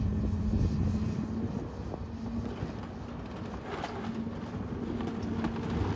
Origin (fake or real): real